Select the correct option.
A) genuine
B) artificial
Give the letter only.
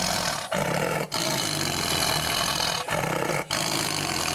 A